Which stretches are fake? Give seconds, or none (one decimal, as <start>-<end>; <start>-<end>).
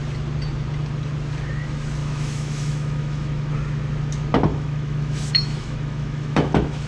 2.0-3.5; 4.5-6.9